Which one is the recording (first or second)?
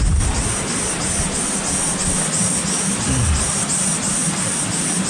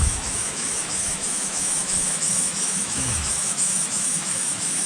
first